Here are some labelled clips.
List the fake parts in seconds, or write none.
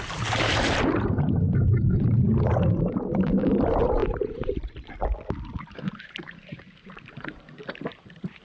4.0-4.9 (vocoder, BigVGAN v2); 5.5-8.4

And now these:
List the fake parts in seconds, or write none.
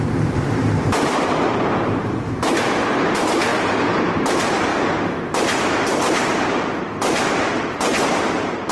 0.0-3.5 (vocoder, BigVGAN v2); 4.0-4.7; 5.3-8.7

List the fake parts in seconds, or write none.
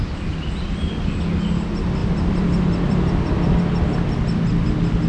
2.0-3.6 (vocoder, BigVGAN v2)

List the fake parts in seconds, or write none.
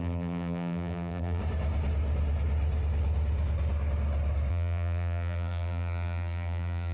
0.0-1.4 (vocoder, BigVGAN v2); 4.5-6.9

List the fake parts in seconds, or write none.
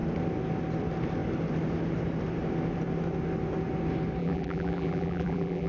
4.2-5.7 (vocoder, BigVGAN v2)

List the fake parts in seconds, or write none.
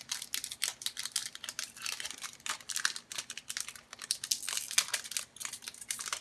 none